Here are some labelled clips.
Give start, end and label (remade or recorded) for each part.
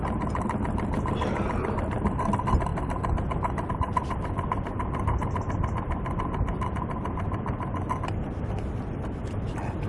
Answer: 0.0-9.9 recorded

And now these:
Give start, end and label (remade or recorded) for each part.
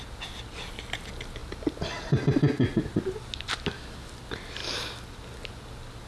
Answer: 0.0-4.6 recorded; 4.6-5.2 remade; 5.2-6.1 recorded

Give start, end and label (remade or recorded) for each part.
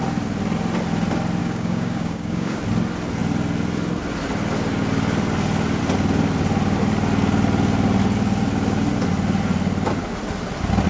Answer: 0.0-1.4 recorded; 1.4-2.6 remade; 2.6-10.9 recorded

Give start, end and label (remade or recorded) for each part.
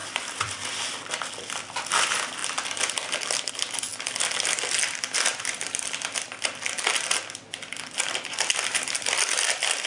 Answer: 0.0-2.4 remade; 2.4-3.5 recorded; 3.5-3.9 remade; 3.9-4.8 recorded; 4.8-5.3 remade; 5.3-8.6 recorded; 8.6-9.9 remade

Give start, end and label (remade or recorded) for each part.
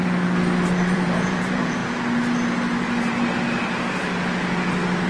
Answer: 0.0-0.9 recorded; 0.9-1.8 remade; 1.8-5.1 recorded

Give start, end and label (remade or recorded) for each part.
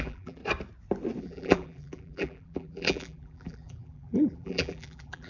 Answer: 0.0-0.4 remade; 0.4-1.2 recorded; 1.2-5.3 remade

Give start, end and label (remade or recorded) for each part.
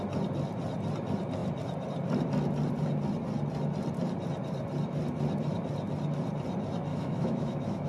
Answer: 0.0-6.9 recorded; 6.9-7.9 remade